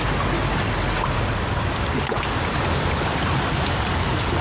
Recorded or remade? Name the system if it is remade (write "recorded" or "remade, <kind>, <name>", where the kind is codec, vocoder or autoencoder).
recorded